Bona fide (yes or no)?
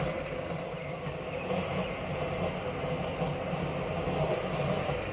yes